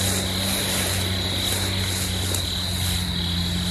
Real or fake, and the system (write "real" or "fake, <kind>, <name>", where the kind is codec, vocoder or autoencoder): real